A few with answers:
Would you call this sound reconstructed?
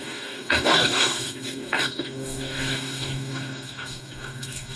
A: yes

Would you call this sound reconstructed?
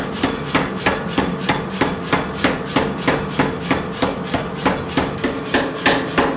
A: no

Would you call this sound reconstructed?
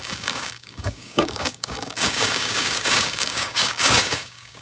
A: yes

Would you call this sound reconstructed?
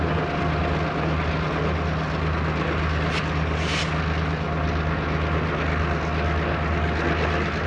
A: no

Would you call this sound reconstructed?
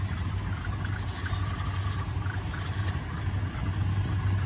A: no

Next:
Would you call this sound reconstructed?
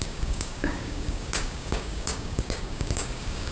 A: yes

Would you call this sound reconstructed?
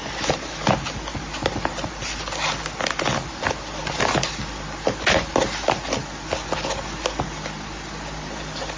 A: no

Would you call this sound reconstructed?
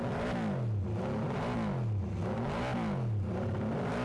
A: no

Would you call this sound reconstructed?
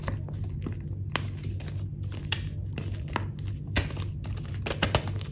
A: no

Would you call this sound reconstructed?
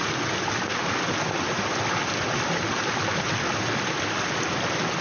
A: no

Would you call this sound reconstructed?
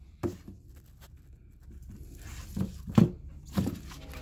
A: no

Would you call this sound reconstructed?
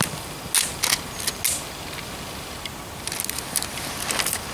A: no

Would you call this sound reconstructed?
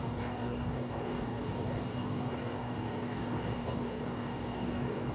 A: yes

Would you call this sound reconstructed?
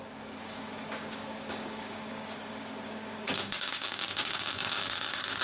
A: yes